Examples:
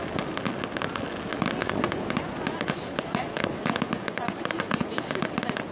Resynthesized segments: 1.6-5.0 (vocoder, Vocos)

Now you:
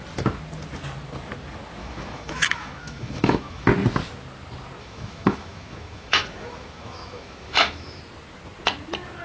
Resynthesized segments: 1.8-3.7 (autoencoder, DAC-VAE); 4.8-8.0

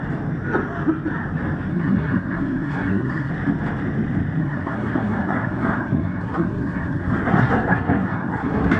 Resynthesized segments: 1.7-3.3 (codec, SNAC); 4.4-8.8

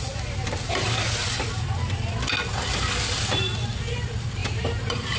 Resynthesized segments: 4.4-5.2 (vocoder, BigVGAN v2)